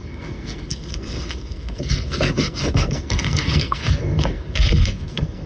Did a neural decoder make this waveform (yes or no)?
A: yes